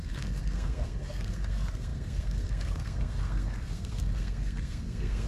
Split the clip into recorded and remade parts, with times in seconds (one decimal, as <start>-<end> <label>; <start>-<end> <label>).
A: 0.0-5.3 remade